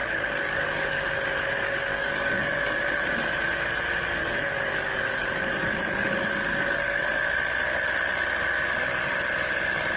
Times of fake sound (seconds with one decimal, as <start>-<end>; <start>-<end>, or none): 0.0-1.0; 1.6-2.8; 4.2-7.0